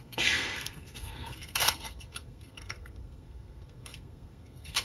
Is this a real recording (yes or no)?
no